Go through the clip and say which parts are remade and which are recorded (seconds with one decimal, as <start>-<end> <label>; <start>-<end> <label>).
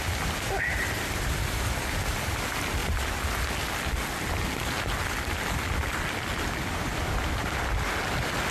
0.0-8.5 recorded